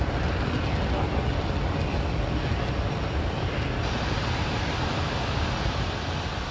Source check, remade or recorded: recorded